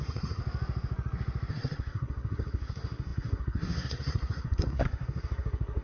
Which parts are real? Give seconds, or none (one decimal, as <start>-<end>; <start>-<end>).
0.4-1.5